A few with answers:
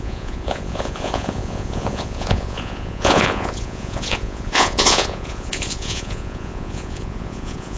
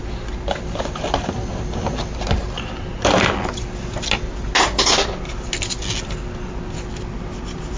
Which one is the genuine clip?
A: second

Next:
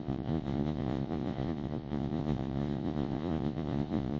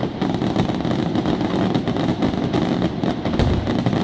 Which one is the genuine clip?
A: second